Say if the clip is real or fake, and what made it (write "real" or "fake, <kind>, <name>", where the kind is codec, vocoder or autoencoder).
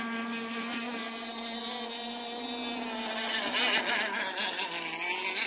real